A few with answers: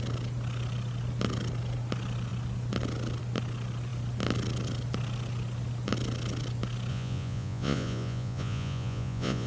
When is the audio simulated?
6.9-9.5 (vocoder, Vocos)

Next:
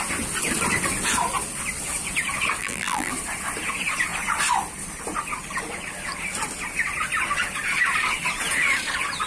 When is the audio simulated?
2.6-3.1 (vocoder, BigVGAN v2)

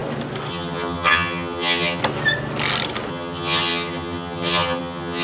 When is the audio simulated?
0.5-2.0 (vocoder, HiFi-GAN); 3.1-5.2

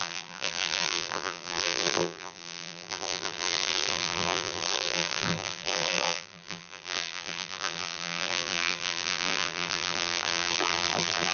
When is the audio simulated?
0.0-11.3 (vocoder, BigVGAN v2)

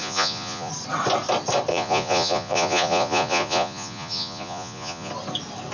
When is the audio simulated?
0.0-0.7 (vocoder, Vocos); 1.7-5.1

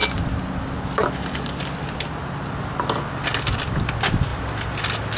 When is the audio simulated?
none

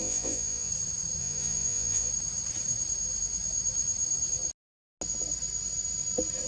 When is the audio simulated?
0.0-0.7 (vocoder, Vocos); 1.2-2.1

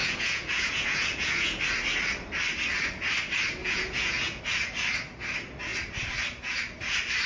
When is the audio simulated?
0.0-1.6 (vocoder, Vocos); 3.6-4.4